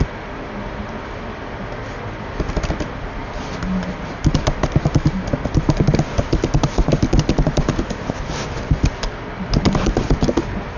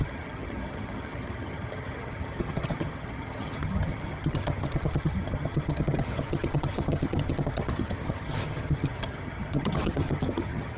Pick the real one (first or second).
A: first